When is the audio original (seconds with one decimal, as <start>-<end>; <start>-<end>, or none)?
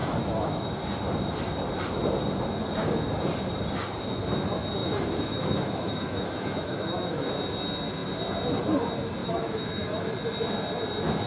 0.6-4.8; 7.3-9.2; 10.1-11.3